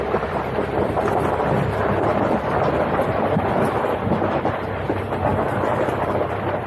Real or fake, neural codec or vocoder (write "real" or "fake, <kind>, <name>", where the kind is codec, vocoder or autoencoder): fake, vocoder, BigVGAN v2